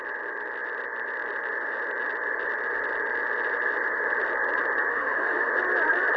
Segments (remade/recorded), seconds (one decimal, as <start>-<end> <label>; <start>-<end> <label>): 0.0-4.9 recorded; 4.9-5.5 remade; 5.5-6.2 recorded